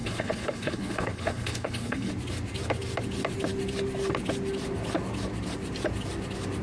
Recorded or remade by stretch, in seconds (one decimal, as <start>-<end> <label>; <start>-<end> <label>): 0.0-2.1 remade; 2.1-6.6 recorded